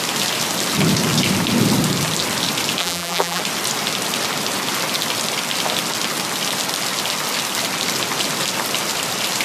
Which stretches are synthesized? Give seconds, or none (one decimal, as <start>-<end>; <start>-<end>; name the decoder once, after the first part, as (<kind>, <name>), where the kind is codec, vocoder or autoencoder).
2.8-3.4 (vocoder, BigVGAN v2)